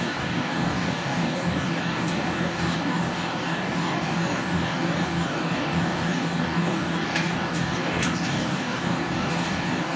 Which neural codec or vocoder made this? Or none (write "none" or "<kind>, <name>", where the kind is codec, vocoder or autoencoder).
codec, DAC